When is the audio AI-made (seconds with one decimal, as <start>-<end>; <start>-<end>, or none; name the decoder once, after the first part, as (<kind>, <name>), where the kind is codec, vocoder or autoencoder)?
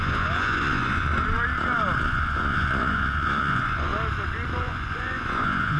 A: 0.0-1.1 (vocoder, Vocos); 2.0-3.9; 4.6-5.8